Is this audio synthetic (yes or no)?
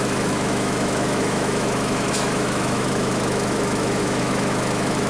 yes